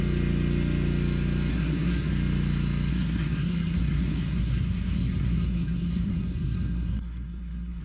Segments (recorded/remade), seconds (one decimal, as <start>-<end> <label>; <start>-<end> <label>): 0.0-1.5 recorded; 1.5-2.1 remade; 2.1-2.9 recorded; 2.9-7.8 remade